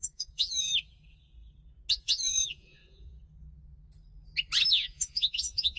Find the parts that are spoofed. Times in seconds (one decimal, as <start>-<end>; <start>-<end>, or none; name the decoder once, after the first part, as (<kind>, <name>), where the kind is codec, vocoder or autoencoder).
0.0-0.7 (vocoder, Vocos); 1.9-3.1; 4.7-5.8